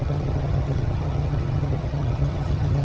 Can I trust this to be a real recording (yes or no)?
no